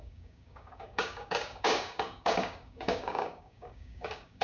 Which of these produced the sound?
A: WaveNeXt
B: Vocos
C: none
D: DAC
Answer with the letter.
D